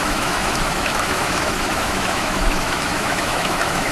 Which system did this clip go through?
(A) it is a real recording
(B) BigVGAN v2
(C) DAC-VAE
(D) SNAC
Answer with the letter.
C